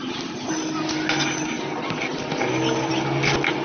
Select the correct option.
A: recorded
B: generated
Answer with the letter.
A